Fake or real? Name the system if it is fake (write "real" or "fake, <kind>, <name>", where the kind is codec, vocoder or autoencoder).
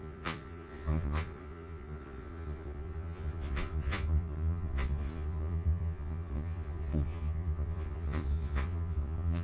fake, vocoder, Vocos